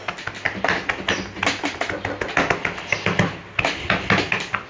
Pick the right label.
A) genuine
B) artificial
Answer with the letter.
A